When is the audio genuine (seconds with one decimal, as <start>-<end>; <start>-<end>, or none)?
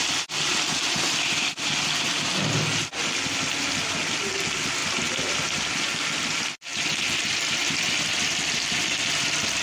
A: 0.0-9.6